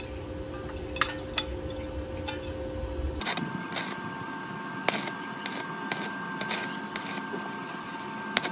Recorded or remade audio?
recorded